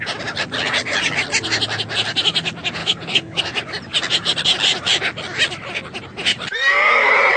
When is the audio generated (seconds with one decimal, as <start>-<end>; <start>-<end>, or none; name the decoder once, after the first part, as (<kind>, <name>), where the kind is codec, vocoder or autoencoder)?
2.8-3.4 (codec, HILCodec)